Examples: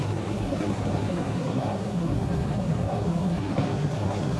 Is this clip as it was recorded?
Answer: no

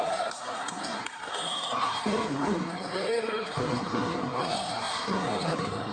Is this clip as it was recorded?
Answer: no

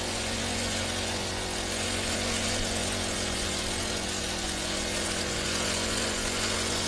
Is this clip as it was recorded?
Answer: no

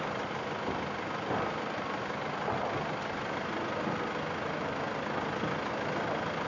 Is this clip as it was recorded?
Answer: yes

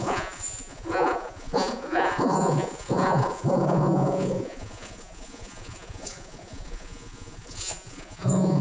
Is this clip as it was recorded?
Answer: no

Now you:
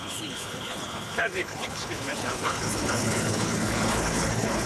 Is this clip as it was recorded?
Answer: no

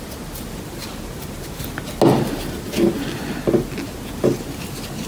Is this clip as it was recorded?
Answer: yes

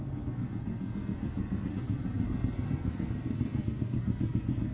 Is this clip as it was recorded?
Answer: no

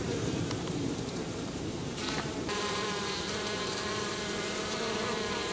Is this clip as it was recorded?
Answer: no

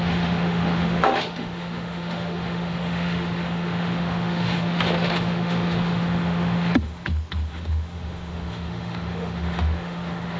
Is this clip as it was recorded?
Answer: no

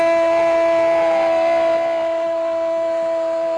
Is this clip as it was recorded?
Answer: yes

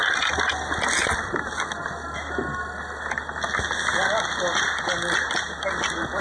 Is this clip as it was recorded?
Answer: yes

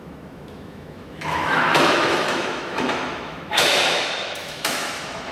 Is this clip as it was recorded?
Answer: no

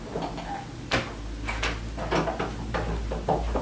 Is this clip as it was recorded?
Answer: yes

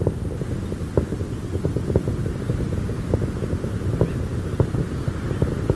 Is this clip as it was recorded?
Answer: yes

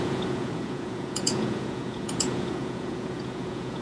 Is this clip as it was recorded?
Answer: no